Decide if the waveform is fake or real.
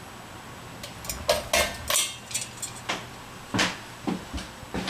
real